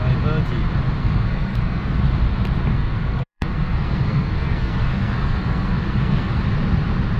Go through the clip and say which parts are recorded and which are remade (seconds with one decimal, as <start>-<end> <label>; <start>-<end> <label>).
0.0-1.0 recorded; 1.0-2.0 remade; 2.0-2.7 recorded; 2.7-6.4 remade; 6.4-7.2 recorded